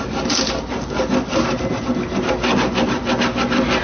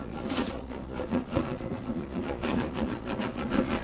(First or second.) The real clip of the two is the first